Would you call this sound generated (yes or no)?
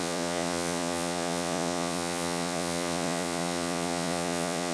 yes